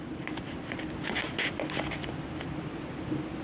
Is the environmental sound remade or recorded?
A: recorded